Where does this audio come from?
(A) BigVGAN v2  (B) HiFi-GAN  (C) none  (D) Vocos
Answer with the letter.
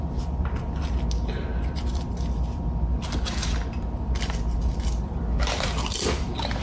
C